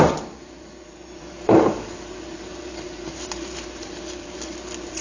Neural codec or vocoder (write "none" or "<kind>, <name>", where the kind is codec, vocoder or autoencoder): vocoder, BigVGAN v2